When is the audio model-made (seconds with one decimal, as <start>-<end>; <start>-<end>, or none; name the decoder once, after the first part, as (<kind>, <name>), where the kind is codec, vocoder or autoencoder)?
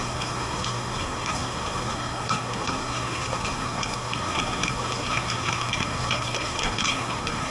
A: 0.0-7.5 (codec, SNAC)